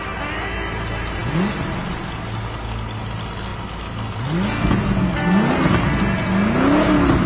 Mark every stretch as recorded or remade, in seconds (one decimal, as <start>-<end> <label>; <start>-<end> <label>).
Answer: 0.0-7.3 recorded